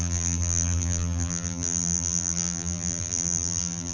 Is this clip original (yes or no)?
no